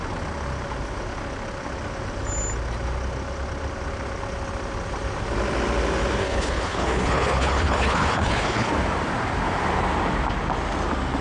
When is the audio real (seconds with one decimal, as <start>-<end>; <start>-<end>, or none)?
0.0-6.2; 8.7-11.2